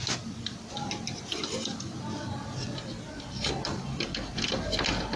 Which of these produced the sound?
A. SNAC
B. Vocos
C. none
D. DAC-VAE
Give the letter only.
C